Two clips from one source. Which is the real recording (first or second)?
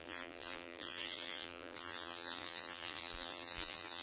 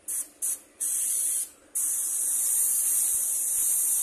second